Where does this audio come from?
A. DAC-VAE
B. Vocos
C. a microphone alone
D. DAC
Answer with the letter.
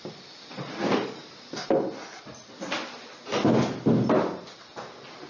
C